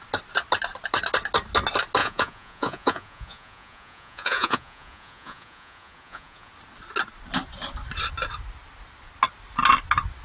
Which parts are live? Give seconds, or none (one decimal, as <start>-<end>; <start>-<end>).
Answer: 0.0-2.0; 6.5-10.2